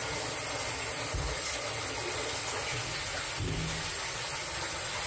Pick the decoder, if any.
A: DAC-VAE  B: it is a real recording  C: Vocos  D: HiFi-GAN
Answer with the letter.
B